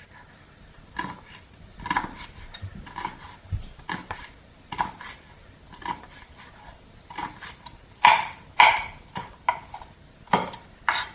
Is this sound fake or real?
real